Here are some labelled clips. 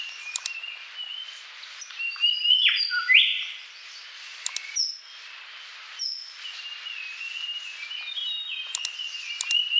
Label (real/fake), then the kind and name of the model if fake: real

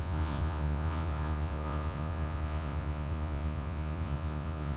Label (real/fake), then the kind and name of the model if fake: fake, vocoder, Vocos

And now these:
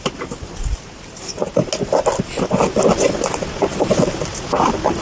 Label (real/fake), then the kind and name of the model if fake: real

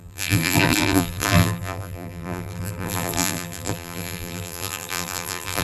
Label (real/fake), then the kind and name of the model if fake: fake, vocoder, BigVGAN v2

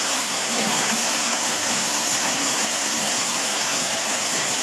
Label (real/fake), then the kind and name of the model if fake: fake, codec, SNAC